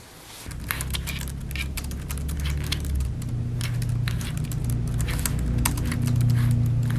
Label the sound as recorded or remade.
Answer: recorded